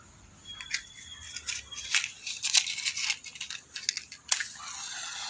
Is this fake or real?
real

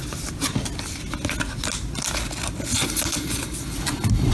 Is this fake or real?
real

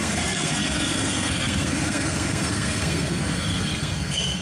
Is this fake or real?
fake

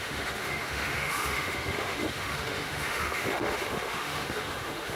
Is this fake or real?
fake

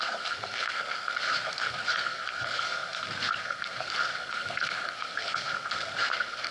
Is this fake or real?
fake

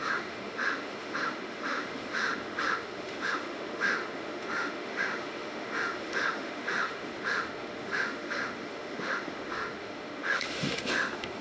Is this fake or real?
fake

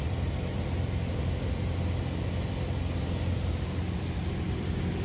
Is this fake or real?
real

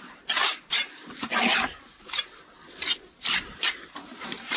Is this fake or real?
real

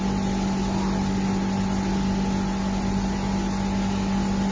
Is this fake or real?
real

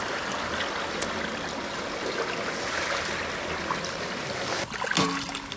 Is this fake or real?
real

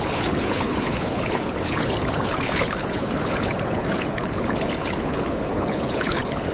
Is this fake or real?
fake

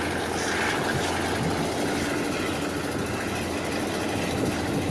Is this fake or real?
real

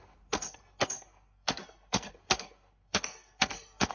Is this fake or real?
fake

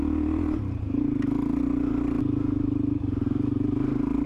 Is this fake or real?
real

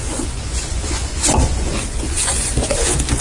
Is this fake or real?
fake